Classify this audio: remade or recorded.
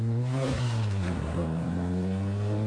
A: remade